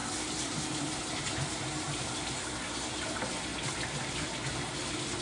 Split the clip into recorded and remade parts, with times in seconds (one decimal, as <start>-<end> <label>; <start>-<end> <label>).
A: 0.0-5.2 recorded